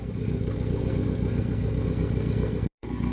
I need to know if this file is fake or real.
fake